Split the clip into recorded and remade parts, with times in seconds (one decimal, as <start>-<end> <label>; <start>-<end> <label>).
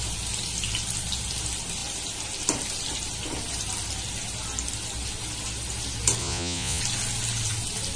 0.0-6.2 recorded; 6.2-6.8 remade; 6.8-8.0 recorded